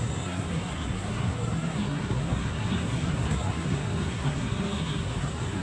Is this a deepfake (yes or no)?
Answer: yes